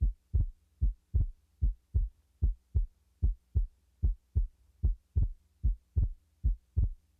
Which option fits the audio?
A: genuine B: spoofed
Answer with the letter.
A